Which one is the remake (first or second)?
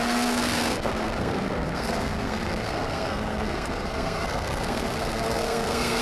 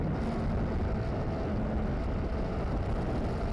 first